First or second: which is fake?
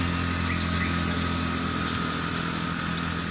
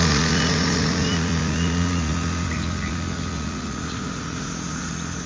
second